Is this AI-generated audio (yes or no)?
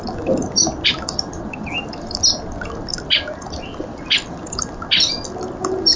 no